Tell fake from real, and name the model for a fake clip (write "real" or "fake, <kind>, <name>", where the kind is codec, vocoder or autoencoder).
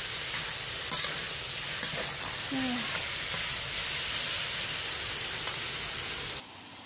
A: real